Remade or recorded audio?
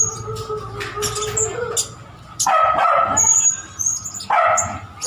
recorded